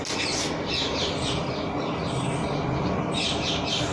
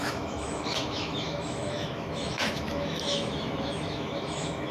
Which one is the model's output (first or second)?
second